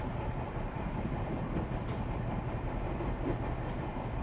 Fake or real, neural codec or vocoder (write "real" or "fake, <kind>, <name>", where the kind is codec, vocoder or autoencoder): real